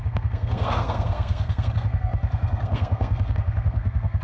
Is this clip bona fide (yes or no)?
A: no